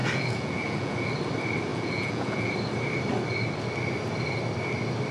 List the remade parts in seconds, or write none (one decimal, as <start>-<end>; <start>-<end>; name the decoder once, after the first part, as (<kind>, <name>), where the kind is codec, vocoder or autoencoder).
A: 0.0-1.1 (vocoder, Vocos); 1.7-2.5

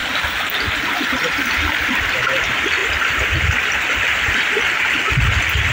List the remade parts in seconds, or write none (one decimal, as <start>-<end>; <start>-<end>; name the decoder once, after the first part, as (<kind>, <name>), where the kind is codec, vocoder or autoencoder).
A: 2.8-4.3 (vocoder, BigVGAN v2)

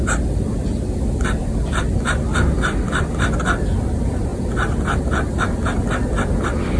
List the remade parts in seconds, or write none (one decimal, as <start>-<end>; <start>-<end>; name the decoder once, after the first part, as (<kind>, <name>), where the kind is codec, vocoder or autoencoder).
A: none

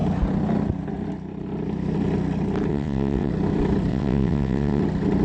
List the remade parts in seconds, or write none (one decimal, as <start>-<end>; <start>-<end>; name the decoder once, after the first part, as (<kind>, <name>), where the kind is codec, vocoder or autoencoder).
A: 2.7-3.3 (vocoder, WaveNeXt); 3.9-4.8

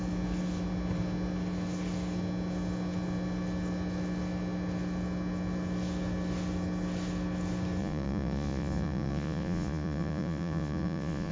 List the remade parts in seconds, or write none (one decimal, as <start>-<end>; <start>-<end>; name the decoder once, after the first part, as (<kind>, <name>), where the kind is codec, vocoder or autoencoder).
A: 7.8-11.3 (vocoder, Vocos)